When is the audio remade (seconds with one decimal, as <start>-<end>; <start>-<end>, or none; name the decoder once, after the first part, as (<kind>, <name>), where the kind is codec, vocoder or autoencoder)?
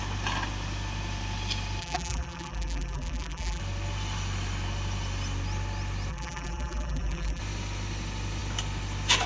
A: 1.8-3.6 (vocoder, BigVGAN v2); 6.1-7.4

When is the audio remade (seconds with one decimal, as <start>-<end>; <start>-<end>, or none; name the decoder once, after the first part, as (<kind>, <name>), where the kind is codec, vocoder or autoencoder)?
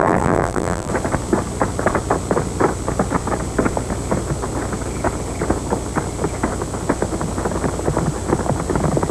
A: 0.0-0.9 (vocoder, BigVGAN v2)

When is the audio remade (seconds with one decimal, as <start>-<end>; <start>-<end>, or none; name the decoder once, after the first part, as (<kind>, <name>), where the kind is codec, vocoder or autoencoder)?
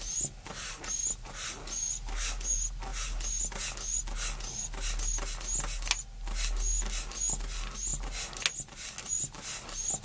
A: none